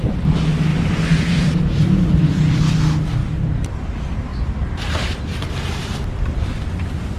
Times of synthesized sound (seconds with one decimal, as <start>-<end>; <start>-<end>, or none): 0.7-2.2; 3.2-3.7; 4.3-5.2